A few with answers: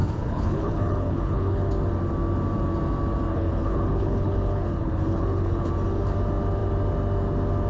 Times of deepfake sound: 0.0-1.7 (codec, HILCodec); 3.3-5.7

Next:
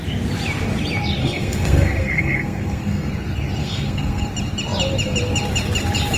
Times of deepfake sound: 1.2-3.1 (codec, SNAC); 3.6-4.2